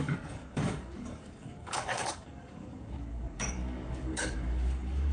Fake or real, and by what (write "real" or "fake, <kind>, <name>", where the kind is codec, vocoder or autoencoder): fake, codec, DAC